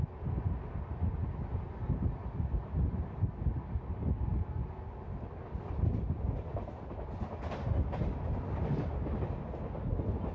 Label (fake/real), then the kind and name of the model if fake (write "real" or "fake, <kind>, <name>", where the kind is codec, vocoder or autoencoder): real